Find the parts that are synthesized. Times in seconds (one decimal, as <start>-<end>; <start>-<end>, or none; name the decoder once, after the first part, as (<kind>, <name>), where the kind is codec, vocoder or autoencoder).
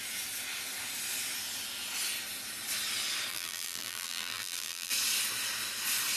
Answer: 3.3-4.9 (vocoder, BigVGAN v2)